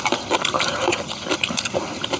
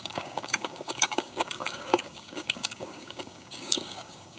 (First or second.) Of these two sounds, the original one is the first